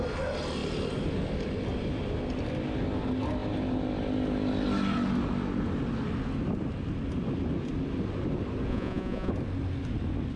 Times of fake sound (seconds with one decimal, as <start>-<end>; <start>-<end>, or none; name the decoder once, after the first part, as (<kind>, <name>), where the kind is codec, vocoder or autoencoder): 8.7-9.3 (vocoder, Vocos)